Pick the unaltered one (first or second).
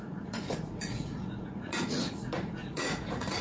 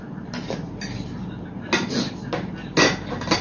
second